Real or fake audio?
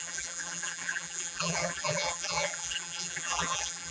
fake